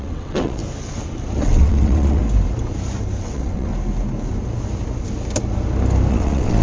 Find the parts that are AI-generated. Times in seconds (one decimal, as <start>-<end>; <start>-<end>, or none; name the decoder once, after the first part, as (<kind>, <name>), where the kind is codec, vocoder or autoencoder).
0.0-0.6 (vocoder, WaveNeXt); 1.4-2.2; 3.2-3.7; 6.1-6.6